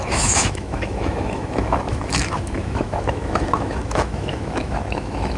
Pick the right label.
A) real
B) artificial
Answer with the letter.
B